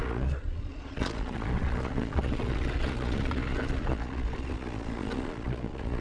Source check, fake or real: fake